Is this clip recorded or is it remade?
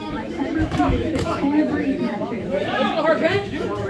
remade